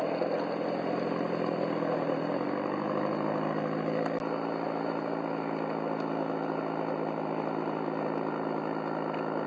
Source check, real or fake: real